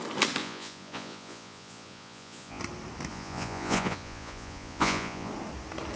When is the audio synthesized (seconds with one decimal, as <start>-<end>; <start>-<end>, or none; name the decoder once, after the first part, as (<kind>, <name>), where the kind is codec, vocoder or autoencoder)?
0.4-2.6 (vocoder, Vocos); 3.1-5.3